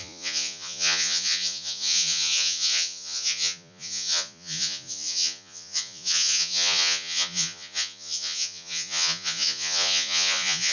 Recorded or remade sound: remade